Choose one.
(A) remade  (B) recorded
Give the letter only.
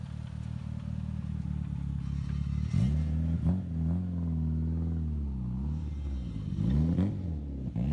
B